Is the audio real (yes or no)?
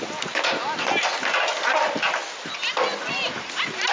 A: yes